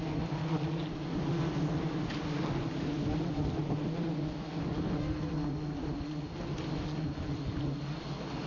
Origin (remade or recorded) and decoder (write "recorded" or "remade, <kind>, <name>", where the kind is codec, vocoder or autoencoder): recorded